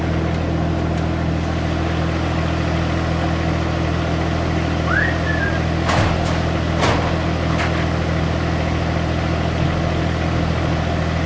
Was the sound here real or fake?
real